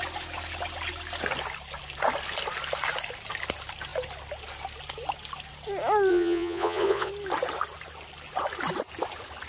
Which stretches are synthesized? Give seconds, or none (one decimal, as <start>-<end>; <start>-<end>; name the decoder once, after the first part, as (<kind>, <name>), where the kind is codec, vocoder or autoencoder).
6.1-7.1 (vocoder, Vocos)